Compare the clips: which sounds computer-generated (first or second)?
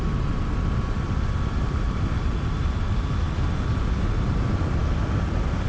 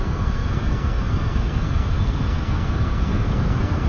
second